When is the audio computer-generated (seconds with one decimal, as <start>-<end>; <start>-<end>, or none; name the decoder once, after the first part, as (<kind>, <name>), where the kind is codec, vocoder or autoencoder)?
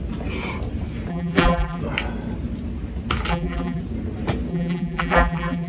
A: 1.1-1.8 (vocoder, BigVGAN v2); 3.3-3.8; 4.5-5.7